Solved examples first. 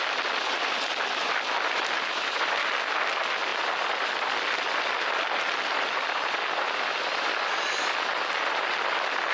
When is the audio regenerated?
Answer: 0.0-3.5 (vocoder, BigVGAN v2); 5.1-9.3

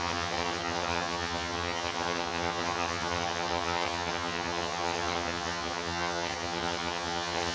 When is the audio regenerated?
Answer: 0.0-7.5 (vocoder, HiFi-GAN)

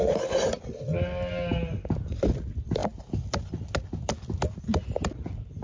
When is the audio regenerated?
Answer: none

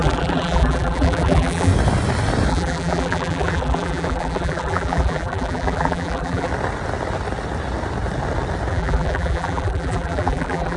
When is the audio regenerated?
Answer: 0.0-1.7 (vocoder, BigVGAN v2); 2.5-6.5; 8.7-10.8